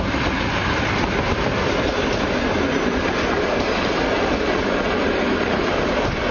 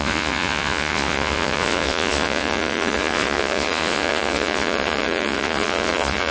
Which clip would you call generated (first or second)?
second